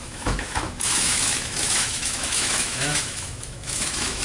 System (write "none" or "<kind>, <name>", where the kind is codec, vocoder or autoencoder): autoencoder, DAC-VAE